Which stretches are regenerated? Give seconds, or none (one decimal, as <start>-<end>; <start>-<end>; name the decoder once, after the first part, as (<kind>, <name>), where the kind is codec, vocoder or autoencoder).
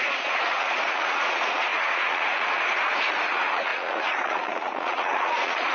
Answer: 0.0-5.7 (vocoder, Vocos)